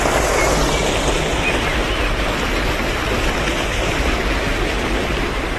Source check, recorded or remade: recorded